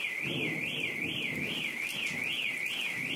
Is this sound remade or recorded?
recorded